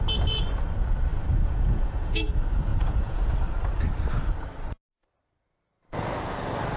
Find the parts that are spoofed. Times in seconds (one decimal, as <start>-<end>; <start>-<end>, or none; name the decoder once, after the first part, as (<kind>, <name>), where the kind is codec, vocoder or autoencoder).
1.1-2.3 (vocoder, Vocos); 2.7-3.3